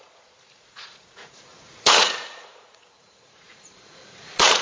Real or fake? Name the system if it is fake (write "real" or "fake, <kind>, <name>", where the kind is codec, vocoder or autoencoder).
fake, vocoder, Vocos